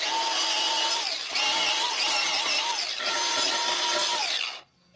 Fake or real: real